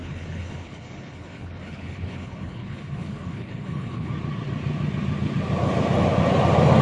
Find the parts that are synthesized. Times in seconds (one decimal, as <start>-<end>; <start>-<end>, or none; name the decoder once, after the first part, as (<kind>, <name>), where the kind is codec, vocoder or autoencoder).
0.0-4.1 (codec, HILCodec)